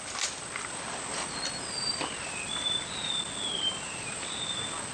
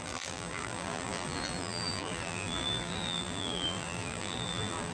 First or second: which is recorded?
first